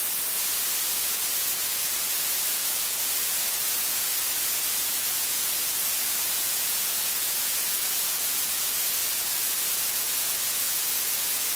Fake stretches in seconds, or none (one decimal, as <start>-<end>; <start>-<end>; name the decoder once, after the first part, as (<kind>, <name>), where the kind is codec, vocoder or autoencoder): 1.0-11.6 (vocoder, Vocos)